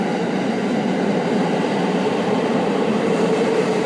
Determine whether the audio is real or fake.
fake